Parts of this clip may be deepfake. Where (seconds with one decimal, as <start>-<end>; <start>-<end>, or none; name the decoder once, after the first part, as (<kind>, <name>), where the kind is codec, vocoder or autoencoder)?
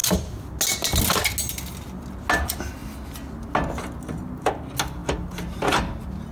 none